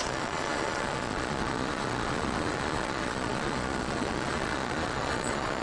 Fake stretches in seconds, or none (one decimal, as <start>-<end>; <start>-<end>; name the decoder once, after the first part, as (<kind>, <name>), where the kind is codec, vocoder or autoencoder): 0.0-5.6 (vocoder, Vocos)

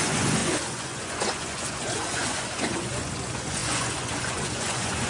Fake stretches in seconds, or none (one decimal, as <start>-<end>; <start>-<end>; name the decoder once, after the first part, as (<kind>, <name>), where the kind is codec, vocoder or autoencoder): 0.0-5.1 (vocoder, Vocos)

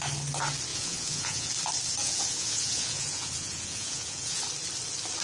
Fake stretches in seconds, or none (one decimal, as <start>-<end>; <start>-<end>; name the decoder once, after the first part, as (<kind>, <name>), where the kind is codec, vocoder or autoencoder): 0.7-1.5 (vocoder, Vocos); 2.0-4.4

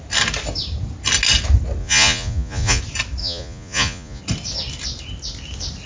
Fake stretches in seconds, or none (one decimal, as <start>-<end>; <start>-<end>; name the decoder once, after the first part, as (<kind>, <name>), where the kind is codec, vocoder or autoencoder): 1.8-2.8 (vocoder, Vocos); 3.2-4.2

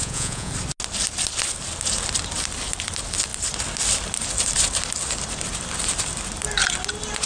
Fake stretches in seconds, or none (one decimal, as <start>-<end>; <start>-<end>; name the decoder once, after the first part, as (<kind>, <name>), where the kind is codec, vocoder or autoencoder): 0.0-0.5 (vocoder, Vocos)

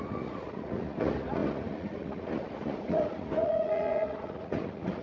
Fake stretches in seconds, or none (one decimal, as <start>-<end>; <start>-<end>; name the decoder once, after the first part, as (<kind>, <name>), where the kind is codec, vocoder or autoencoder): 0.0-5.0 (vocoder, Vocos)

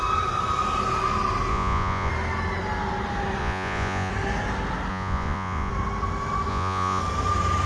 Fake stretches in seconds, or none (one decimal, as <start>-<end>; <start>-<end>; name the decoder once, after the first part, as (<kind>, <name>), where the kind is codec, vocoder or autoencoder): 1.5-2.1 (vocoder, Vocos); 3.4-4.1; 4.9-5.7; 6.5-7.0